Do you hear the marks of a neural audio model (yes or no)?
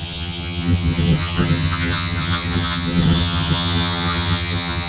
yes